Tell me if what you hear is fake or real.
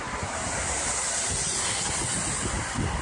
real